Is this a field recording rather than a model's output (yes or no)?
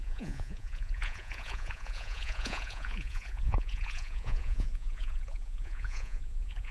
no